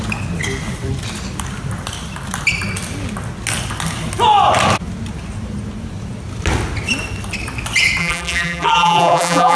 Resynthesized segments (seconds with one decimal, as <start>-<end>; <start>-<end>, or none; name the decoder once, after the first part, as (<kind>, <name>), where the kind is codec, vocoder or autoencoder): 8.0-9.6 (vocoder, BigVGAN v2)